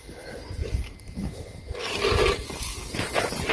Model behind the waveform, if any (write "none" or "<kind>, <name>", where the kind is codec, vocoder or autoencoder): none